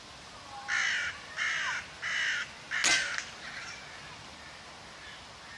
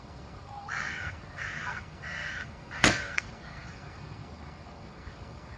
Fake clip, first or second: second